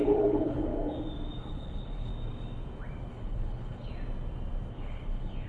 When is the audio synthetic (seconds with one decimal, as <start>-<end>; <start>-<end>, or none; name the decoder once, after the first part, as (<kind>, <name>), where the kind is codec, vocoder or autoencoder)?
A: 0.0-0.7 (codec, HILCodec); 1.4-2.1; 3.1-3.9; 4.7-5.5